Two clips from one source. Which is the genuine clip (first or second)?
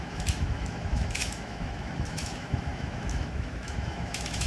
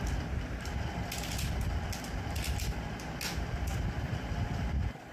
second